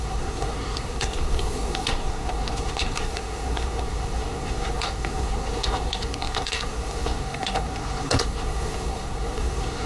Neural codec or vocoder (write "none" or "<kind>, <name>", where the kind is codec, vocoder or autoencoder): codec, SNAC